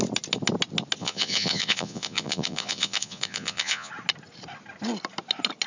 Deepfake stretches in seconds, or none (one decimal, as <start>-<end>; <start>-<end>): 1.0-3.9